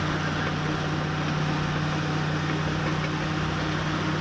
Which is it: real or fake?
real